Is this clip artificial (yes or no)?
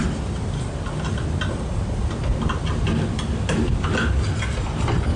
no